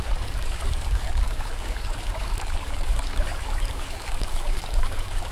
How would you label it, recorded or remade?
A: remade